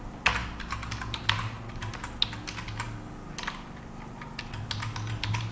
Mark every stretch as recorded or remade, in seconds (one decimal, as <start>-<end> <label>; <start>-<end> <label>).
0.0-5.5 recorded